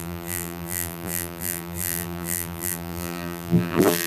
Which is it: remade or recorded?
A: remade